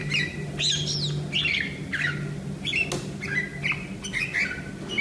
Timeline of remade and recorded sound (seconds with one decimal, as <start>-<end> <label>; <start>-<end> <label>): 0.0-5.0 recorded